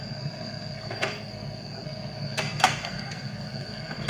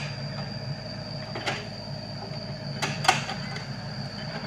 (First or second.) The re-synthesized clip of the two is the first